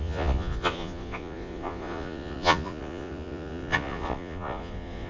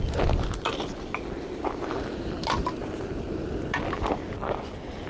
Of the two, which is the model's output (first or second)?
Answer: first